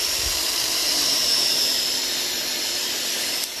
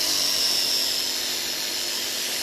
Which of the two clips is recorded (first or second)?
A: second